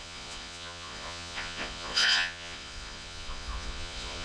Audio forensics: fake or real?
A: fake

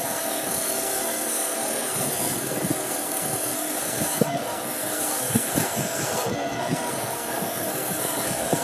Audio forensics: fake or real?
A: fake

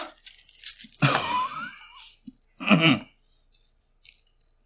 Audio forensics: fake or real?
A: real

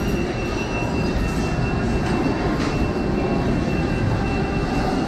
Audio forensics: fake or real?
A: real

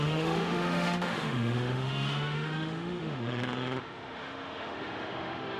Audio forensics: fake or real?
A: fake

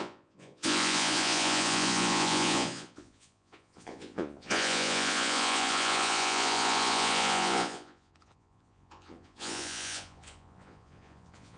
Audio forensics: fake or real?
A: fake